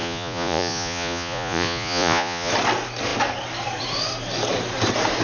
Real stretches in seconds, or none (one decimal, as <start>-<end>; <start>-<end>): 2.5-5.2

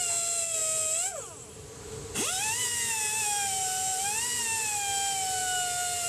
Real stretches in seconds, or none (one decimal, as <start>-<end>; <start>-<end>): 0.0-6.1